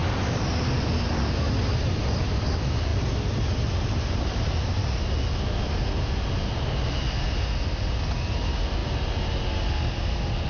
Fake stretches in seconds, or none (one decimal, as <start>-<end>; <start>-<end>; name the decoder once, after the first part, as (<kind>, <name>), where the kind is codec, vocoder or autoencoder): none

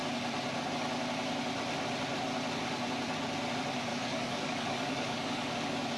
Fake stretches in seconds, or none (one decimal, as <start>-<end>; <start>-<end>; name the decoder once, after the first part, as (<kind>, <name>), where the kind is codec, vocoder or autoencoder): 3.9-5.5 (codec, DAC)

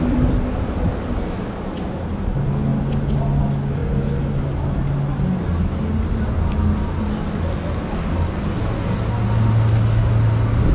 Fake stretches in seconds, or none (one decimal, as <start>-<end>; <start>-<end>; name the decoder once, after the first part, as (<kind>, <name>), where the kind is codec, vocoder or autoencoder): none